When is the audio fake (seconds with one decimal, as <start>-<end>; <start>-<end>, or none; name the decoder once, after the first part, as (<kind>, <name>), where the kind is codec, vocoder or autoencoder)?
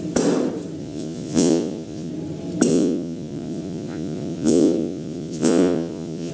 0.8-2.1 (vocoder, Vocos); 2.7-6.3